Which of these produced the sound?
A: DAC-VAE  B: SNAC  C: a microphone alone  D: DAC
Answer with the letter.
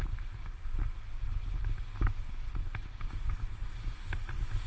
C